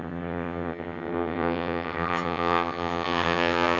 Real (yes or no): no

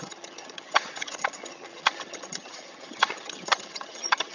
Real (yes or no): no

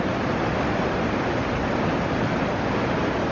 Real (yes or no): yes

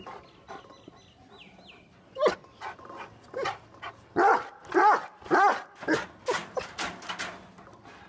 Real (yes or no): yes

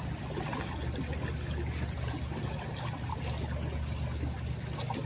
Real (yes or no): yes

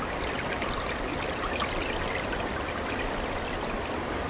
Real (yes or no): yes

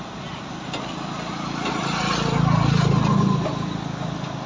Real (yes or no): yes